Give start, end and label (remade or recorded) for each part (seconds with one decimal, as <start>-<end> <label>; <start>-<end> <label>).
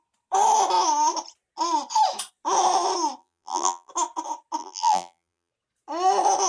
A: 0.0-3.2 recorded; 3.2-3.9 remade; 3.9-4.6 recorded; 4.6-5.5 remade; 5.5-6.5 recorded